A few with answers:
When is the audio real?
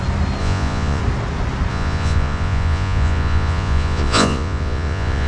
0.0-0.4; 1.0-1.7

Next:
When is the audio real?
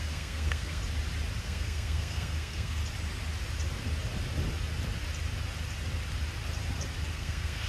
0.8-1.4; 2.8-7.1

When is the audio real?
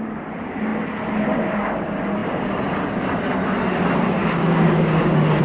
0.0-4.2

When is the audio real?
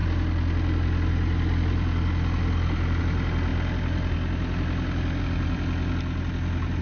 0.0-6.8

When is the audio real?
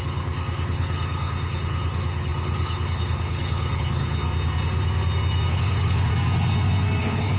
4.2-5.5; 6.1-7.0